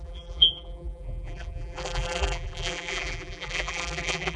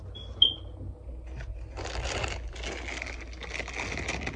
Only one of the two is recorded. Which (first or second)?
second